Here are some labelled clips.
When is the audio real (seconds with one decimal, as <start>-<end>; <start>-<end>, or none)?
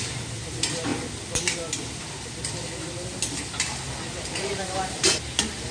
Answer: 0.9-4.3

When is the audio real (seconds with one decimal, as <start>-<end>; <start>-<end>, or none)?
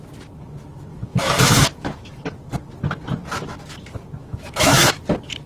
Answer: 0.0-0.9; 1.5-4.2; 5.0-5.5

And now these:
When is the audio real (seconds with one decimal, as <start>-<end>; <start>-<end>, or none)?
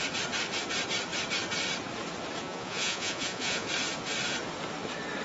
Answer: 0.0-2.4; 3.7-5.2